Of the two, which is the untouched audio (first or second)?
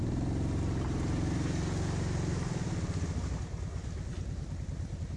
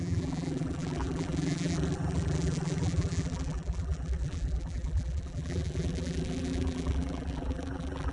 first